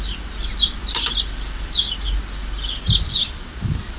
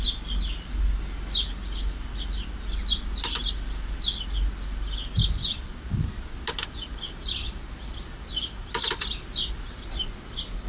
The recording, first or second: second